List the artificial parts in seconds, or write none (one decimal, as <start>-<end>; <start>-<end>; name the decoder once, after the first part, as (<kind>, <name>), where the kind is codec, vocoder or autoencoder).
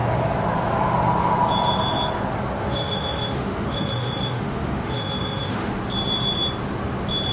2.6-5.8 (autoencoder, DAC-VAE)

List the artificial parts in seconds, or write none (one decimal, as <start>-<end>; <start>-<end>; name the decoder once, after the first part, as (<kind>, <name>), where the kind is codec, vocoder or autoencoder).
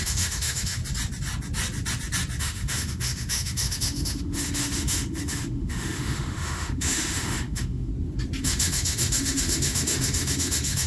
0.0-0.8 (autoencoder, DAC-VAE); 2.4-7.9; 8.4-10.9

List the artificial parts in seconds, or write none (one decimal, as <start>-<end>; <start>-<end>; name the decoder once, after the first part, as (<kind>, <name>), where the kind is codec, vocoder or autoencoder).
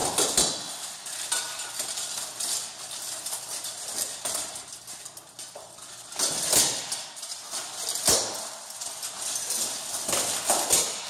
none